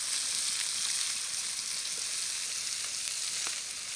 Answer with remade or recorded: recorded